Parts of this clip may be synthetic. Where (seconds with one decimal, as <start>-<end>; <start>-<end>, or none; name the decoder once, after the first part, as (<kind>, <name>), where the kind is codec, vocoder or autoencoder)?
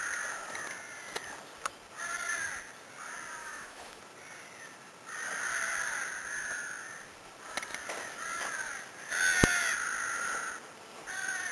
3.4-4.0 (autoencoder, DAC-VAE)